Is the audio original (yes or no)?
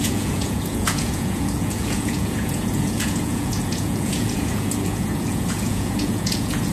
no